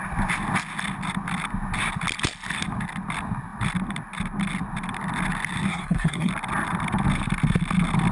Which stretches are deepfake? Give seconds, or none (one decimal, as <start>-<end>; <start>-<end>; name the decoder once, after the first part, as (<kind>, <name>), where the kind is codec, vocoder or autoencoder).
5.7-6.3 (codec, SNAC)